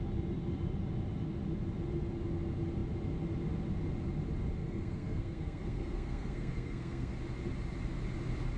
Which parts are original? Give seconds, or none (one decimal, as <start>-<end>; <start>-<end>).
0.0-4.6; 7.1-8.6